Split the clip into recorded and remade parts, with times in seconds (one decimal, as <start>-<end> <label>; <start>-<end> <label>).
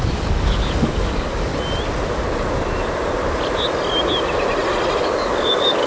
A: 0.0-1.5 remade; 1.5-5.0 recorded; 5.0-5.9 remade